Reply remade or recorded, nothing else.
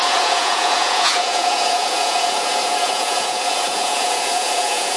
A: remade